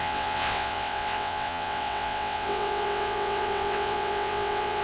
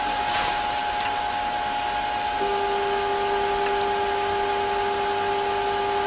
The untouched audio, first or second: second